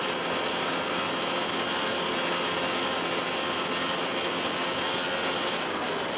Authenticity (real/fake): real